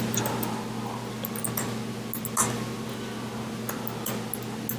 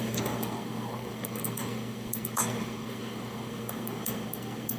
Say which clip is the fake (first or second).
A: second